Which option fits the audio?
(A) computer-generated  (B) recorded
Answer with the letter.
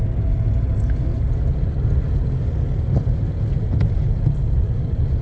B